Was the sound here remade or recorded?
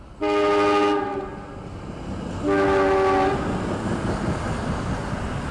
recorded